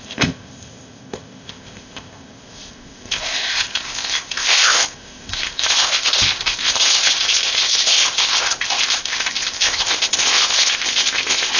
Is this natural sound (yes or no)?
no